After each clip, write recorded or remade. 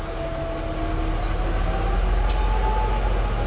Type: recorded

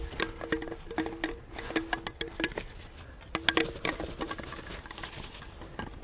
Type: recorded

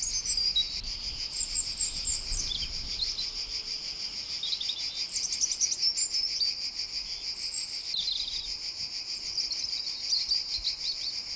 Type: recorded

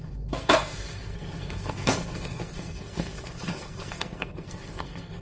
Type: remade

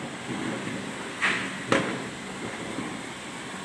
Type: recorded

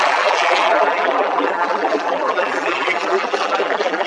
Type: remade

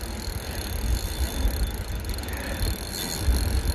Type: recorded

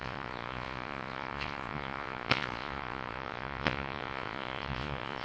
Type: remade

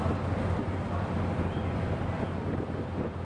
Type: remade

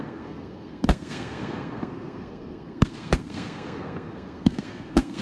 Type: remade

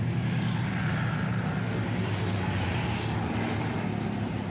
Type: recorded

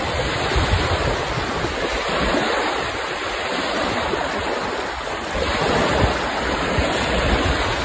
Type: recorded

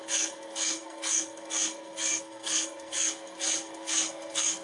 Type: remade